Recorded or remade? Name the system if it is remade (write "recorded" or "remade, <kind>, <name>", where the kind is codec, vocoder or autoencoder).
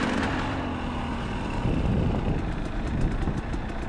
recorded